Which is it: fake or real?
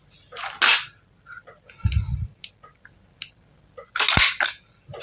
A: real